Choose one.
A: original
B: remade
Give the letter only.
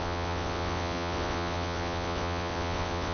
B